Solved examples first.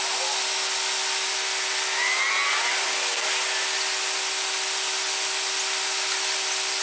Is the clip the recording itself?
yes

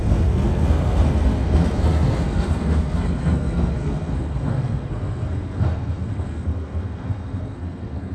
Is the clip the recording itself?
no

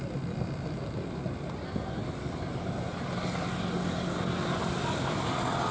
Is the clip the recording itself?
yes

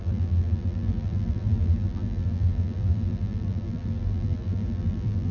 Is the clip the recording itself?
no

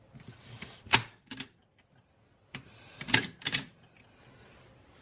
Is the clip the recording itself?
no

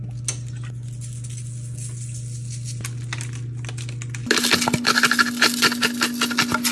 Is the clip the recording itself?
yes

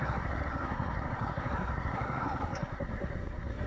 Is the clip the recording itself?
no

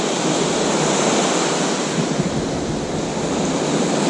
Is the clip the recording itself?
yes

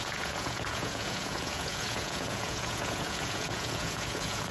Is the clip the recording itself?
no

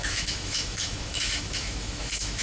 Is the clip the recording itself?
no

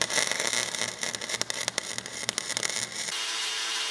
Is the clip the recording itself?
yes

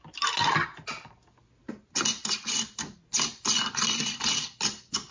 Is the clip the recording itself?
yes